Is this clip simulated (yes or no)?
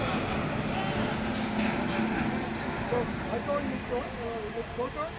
no